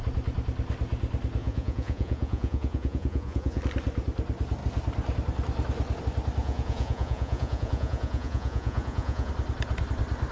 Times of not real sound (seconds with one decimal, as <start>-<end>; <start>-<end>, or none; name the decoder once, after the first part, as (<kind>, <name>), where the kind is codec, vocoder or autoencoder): 1.4-3.6 (vocoder, Vocos); 6.4-9.3